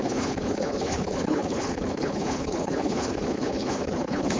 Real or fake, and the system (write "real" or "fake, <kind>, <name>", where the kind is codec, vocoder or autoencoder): fake, codec, HILCodec